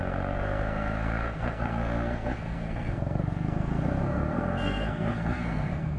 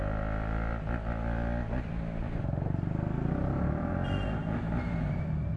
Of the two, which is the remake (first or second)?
first